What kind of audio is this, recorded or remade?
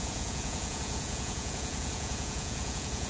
remade